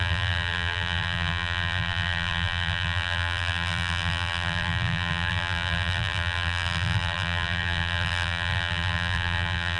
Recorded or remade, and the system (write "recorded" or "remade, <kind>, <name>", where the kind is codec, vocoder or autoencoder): remade, vocoder, BigVGAN v2